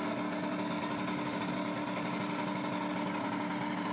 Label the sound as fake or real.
real